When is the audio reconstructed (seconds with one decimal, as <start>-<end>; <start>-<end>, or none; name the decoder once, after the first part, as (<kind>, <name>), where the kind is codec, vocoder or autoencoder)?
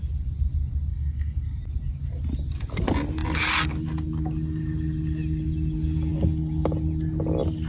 0.9-1.6 (codec, SNAC)